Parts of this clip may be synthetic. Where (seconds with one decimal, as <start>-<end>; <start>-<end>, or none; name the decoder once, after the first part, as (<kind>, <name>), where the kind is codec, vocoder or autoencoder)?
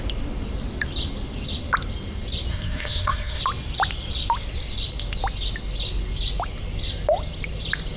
2.5-3.4 (codec, SNAC)